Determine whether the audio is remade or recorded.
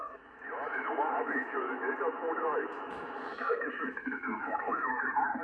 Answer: remade